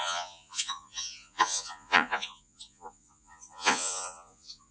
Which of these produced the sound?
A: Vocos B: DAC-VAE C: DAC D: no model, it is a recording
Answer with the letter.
A